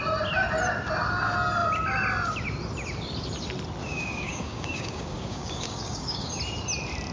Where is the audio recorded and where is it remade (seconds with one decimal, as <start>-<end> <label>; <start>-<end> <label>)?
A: 0.0-3.8 recorded; 3.8-6.3 remade; 6.3-7.1 recorded